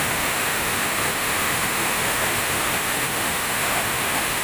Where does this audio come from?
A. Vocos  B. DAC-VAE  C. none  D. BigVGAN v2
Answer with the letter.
B